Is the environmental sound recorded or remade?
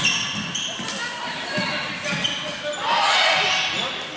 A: recorded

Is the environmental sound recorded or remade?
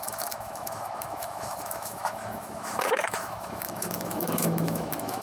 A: remade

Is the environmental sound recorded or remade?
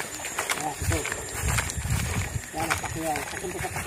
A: recorded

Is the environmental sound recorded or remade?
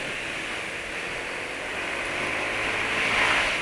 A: recorded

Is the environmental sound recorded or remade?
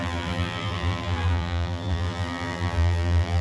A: remade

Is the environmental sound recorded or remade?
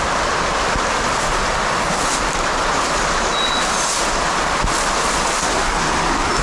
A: recorded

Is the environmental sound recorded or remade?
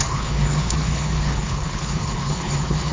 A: remade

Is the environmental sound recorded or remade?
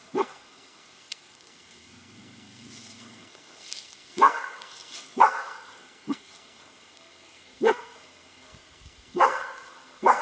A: remade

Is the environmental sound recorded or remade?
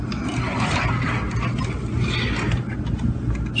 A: recorded